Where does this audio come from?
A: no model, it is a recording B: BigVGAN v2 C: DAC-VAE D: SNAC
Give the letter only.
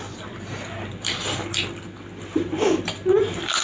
A